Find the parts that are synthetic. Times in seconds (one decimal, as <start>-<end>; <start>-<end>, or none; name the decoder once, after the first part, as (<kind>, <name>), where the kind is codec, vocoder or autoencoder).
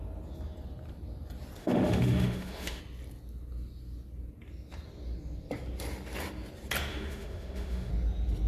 1.6-2.8 (autoencoder, DAC-VAE); 6.9-7.9